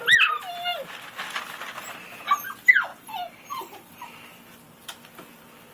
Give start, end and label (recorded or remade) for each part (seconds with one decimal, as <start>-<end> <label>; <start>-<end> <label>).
0.0-2.9 recorded; 2.9-3.9 remade; 3.9-5.7 recorded